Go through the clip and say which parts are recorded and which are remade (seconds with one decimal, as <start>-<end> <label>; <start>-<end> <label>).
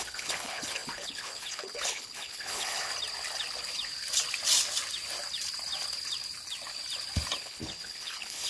0.0-2.9 remade; 2.9-7.4 recorded; 7.4-8.5 remade